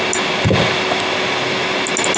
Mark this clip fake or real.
real